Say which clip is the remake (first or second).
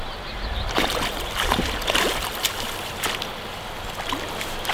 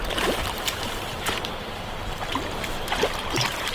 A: second